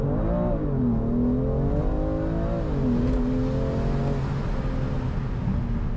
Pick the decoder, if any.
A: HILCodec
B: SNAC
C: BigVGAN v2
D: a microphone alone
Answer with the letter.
D